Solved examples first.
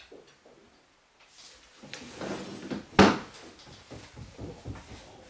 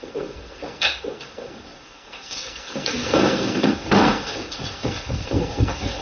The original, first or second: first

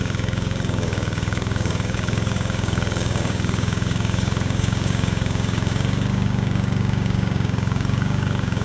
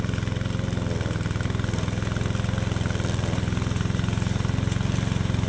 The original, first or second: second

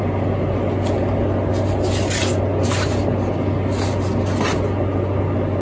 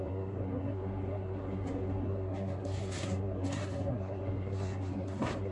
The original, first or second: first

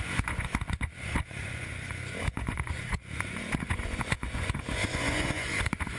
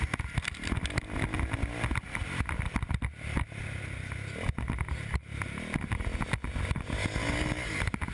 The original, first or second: second